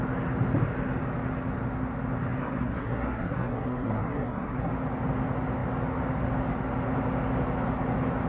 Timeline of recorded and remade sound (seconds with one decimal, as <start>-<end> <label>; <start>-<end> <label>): 0.0-2.4 recorded; 2.4-4.7 remade; 4.7-8.3 recorded